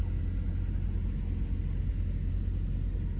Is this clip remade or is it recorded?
recorded